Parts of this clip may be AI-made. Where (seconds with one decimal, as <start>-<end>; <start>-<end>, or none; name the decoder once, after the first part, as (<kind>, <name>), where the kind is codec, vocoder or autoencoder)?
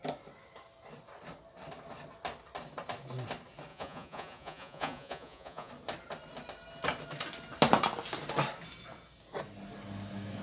3.7-5.7 (vocoder, Vocos)